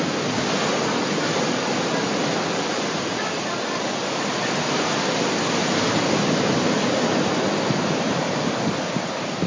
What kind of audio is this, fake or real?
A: real